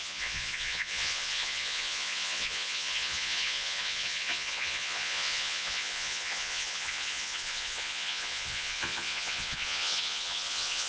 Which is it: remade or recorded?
remade